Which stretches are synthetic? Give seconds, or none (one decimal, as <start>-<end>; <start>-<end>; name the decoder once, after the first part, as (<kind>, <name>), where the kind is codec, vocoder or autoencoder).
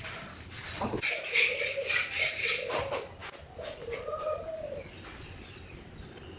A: none